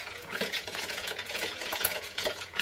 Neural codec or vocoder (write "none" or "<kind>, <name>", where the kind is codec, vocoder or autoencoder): vocoder, Vocos